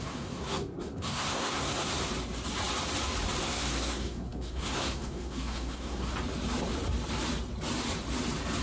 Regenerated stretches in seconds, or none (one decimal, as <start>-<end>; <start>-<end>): 0.0-2.0; 3.4-6.1